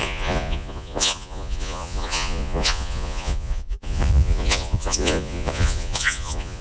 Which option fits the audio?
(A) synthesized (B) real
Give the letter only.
A